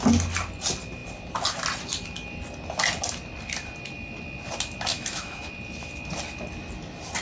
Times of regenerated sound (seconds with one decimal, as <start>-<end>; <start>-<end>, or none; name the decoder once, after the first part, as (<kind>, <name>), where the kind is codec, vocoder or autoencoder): 4.9-5.5 (autoencoder, DAC-VAE)